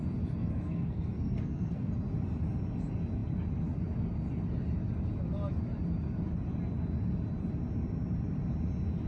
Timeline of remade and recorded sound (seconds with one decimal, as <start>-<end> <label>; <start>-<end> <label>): 0.0-0.4 recorded; 0.4-1.9 remade; 1.9-9.1 recorded